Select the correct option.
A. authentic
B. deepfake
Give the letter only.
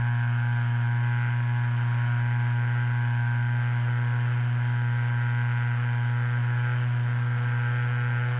A